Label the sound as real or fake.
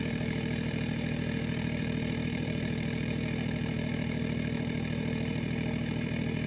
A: fake